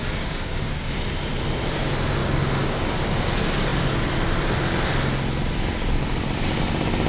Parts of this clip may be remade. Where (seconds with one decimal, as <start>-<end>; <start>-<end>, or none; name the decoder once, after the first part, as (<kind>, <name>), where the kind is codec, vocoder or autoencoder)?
0.0-1.0 (codec, DAC); 2.2-2.9